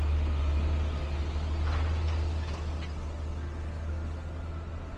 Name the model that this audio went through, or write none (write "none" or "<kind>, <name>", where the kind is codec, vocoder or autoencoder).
none